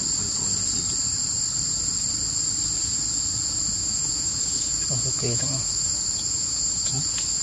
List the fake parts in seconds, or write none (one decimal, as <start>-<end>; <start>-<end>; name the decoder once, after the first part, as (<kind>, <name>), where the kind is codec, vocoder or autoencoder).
3.8-7.4 (autoencoder, DAC-VAE)